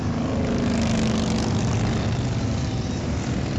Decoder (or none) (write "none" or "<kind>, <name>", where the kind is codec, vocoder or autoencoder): none